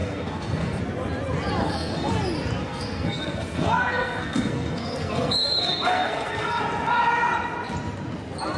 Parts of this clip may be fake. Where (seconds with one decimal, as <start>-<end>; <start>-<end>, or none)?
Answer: 0.0-0.8; 1.6-2.1; 2.6-6.6